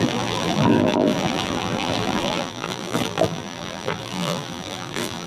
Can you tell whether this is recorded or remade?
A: remade